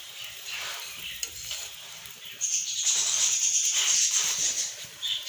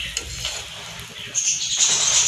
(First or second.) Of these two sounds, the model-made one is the first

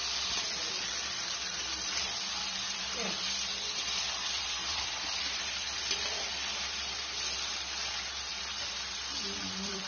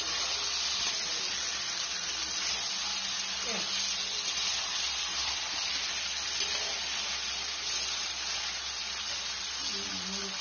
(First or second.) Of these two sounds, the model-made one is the first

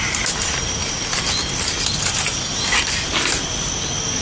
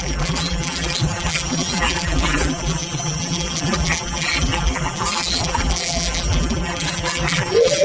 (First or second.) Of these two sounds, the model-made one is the second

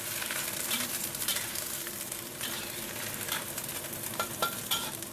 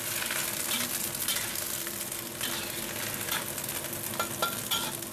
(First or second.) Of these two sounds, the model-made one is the first